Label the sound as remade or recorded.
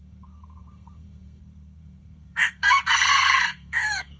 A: remade